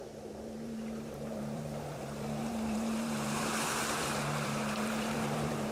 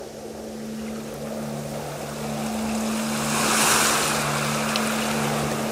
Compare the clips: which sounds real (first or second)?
second